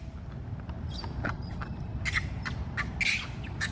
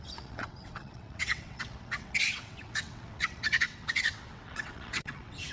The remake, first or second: second